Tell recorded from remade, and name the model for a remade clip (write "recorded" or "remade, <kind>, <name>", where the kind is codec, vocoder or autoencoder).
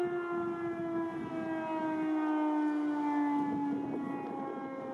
recorded